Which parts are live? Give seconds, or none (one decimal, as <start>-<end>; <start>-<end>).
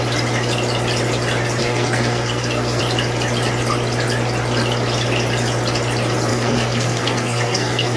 0.0-1.6; 2.8-6.3